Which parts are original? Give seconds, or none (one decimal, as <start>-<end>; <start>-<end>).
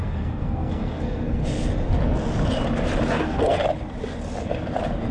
1.4-3.1; 3.6-5.1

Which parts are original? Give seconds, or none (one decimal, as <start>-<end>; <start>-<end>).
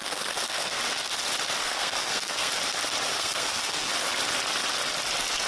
0.8-1.6; 2.5-3.1; 3.9-5.5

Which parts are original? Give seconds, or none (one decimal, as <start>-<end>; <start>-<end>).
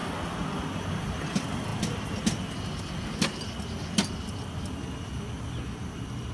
0.0-6.3